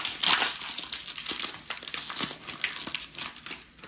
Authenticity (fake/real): real